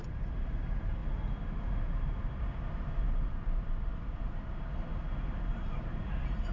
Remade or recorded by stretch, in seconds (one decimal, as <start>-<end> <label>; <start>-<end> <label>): 0.0-1.0 remade; 1.0-1.6 recorded; 1.6-6.5 remade

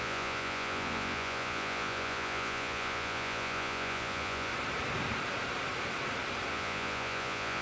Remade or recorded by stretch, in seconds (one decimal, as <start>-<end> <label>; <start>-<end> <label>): 0.0-4.5 remade; 4.5-6.5 recorded; 6.5-7.6 remade

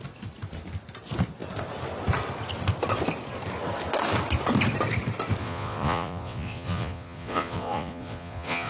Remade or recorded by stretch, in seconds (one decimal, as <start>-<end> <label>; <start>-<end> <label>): 0.0-5.4 recorded; 5.4-8.7 remade

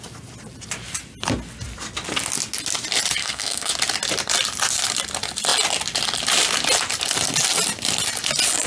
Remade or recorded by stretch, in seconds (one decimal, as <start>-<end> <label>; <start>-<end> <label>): 0.0-3.2 recorded; 3.2-3.7 remade; 3.7-8.7 recorded

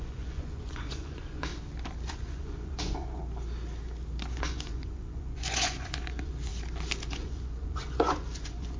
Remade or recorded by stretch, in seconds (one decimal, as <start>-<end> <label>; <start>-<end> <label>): 0.0-1.5 remade; 1.5-2.1 recorded; 2.1-3.2 remade; 3.2-4.3 recorded; 4.3-6.5 remade; 6.5-7.1 recorded; 7.1-8.8 remade

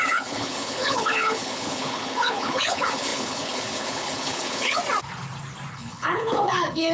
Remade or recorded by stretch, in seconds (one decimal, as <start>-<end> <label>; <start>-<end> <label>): 0.0-4.8 remade; 4.8-5.7 recorded; 5.7-6.9 remade

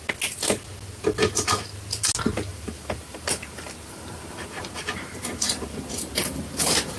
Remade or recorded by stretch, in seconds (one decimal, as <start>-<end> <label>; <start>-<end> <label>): 0.0-2.5 recorded; 2.5-7.0 remade

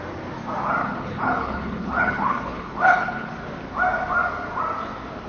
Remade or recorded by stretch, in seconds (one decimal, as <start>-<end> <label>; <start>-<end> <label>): 0.0-0.8 recorded; 0.8-3.3 remade; 3.3-5.3 recorded